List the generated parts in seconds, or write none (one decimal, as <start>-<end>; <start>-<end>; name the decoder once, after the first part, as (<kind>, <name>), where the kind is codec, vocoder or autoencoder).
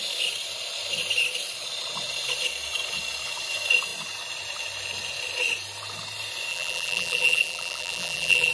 6.5-8.5 (vocoder, BigVGAN v2)